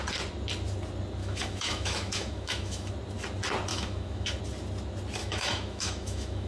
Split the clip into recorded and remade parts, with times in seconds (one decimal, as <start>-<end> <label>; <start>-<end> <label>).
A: 0.0-1.2 recorded; 1.2-2.9 remade; 2.9-3.7 recorded; 3.7-4.4 remade; 4.4-5.2 recorded; 5.2-6.5 remade